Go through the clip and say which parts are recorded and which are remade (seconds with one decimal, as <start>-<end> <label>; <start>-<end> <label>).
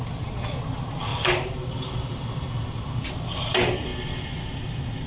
0.0-1.1 recorded; 1.1-2.5 remade; 2.5-5.1 recorded